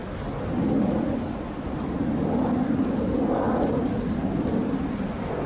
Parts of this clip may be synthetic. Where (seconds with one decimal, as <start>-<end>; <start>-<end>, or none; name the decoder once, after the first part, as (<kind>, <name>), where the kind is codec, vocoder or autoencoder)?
none